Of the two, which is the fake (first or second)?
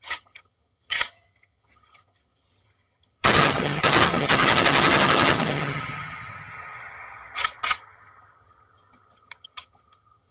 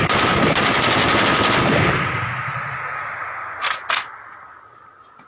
first